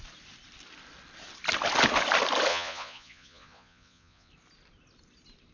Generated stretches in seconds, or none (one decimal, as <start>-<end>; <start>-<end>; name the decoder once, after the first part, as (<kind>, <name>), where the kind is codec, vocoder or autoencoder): 2.5-4.3 (vocoder, Vocos)